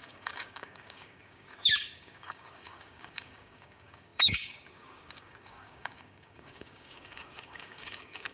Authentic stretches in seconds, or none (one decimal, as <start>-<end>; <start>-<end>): none

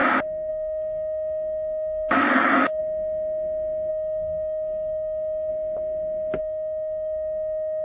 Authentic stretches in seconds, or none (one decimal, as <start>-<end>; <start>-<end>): 0.0-0.5; 2.8-3.9; 5.5-6.4

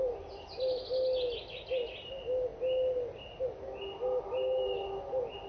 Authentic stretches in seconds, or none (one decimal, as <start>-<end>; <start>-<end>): 0.0-5.5

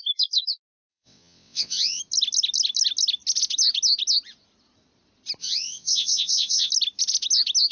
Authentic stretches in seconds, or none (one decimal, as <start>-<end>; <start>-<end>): 0.0-0.9; 2.0-5.4; 6.7-7.7